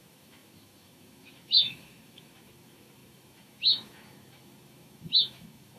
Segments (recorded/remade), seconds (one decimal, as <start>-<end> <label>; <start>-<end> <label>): 0.0-5.8 remade